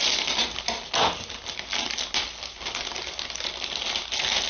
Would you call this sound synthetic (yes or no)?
no